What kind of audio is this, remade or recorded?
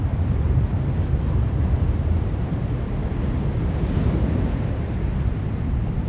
remade